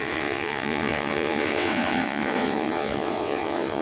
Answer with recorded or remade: remade